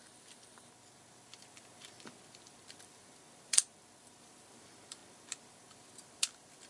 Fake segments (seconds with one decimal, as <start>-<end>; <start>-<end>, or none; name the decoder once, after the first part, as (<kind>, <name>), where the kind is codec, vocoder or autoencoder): 0.0-6.7 (vocoder, BigVGAN v2)